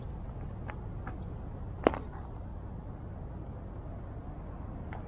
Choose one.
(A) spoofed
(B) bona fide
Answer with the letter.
B